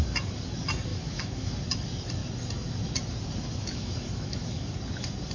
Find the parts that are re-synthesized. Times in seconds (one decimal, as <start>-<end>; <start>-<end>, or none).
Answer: 0.9-1.5; 3.6-4.7